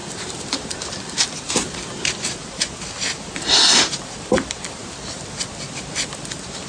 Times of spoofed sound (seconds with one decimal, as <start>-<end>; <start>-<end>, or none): 0.0-1.8

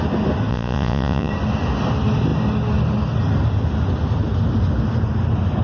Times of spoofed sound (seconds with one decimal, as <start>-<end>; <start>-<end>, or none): 0.5-1.3

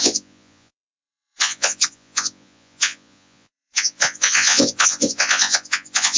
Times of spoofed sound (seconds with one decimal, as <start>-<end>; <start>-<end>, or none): 0.0-6.2

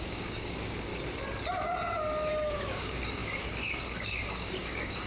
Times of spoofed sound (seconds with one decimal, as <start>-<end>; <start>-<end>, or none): 0.0-0.9; 2.3-5.1

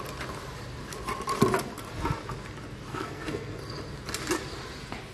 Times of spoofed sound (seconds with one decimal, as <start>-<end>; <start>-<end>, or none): 2.9-3.6